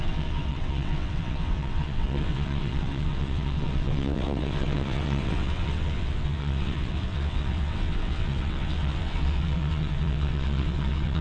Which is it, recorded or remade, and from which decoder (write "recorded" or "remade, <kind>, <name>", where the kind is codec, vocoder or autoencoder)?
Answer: remade, vocoder, WaveNeXt